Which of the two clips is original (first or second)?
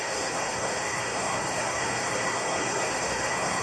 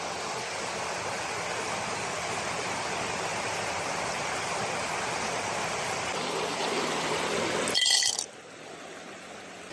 second